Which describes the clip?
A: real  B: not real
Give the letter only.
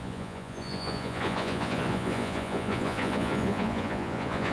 B